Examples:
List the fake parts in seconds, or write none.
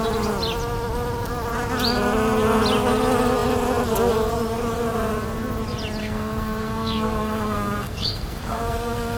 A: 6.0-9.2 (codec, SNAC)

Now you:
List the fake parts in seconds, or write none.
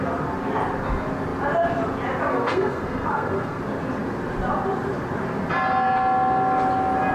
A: 2.3-3.6 (codec, SNAC)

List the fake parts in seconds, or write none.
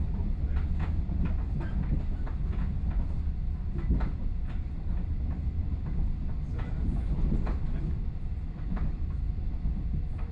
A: none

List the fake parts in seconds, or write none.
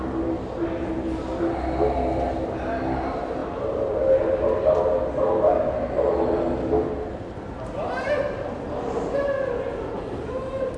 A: none